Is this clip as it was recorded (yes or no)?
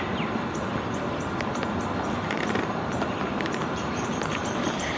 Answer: yes